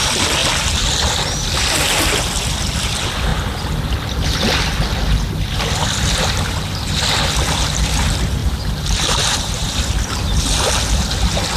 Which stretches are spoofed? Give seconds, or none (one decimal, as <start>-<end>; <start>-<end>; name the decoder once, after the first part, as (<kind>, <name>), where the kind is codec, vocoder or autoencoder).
8.4-9.7 (vocoder, BigVGAN v2)